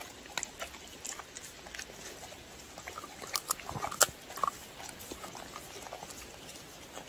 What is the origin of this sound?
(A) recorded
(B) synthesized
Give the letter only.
A